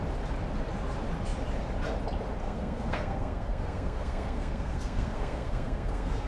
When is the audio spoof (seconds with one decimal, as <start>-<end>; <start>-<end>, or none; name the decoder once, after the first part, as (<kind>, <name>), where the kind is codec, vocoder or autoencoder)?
2.4-6.3 (codec, SNAC)

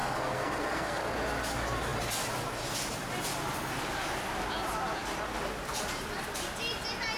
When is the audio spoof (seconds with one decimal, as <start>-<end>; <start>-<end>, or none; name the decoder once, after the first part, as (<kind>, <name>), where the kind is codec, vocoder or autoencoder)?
0.0-1.1 (codec, SNAC)

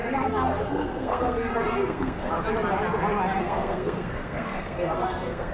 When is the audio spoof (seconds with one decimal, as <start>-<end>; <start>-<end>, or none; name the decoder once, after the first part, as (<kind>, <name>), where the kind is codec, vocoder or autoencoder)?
0.0-2.3 (codec, SNAC); 3.4-5.5

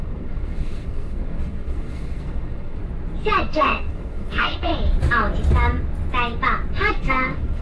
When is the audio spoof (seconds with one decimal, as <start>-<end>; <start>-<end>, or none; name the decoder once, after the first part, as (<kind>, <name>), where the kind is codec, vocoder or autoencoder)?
0.0-2.8 (codec, SNAC); 3.4-4.7; 6.9-7.6

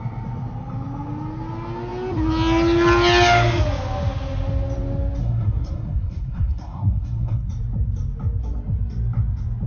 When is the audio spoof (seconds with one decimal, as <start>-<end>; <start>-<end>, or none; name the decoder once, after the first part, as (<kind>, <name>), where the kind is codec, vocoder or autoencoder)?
5.2-7.5 (codec, SNAC)

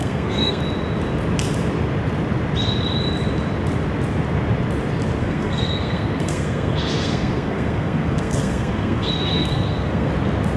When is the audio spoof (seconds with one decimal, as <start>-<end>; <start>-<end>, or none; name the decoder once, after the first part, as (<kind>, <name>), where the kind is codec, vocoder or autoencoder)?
0.0-0.6 (codec, SNAC); 5.2-10.1

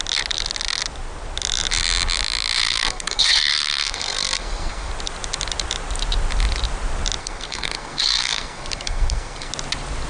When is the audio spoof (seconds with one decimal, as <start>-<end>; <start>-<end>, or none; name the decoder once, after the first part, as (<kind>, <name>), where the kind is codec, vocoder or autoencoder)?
2.6-4.9 (codec, SNAC); 7.2-9.5